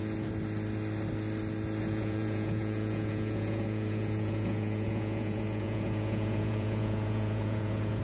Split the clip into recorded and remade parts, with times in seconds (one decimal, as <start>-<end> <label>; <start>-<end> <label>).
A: 0.0-1.8 recorded; 1.8-8.0 remade